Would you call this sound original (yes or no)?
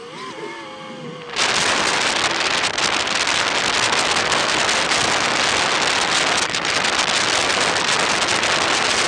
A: yes